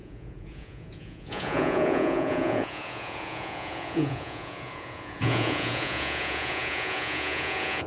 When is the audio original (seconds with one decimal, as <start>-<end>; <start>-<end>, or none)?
none